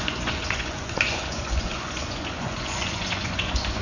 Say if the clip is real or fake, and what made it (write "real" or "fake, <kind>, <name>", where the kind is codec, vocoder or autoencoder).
fake, vocoder, Vocos